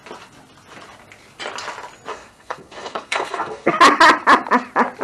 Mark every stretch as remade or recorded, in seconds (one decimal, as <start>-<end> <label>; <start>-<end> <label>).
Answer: 0.0-2.1 recorded; 2.1-3.7 remade; 3.7-5.0 recorded